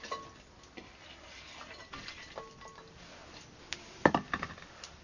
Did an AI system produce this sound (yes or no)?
no